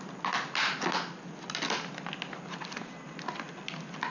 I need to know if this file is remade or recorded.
recorded